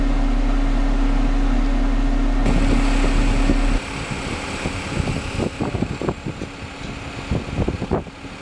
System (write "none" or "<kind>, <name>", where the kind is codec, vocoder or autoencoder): none